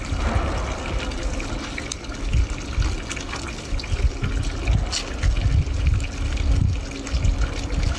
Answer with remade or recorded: recorded